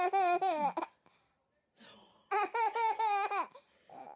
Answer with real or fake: real